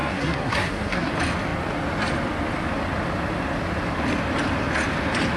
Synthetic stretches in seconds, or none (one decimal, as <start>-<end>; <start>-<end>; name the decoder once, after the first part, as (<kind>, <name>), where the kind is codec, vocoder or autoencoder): 0.0-1.1 (codec, SNAC)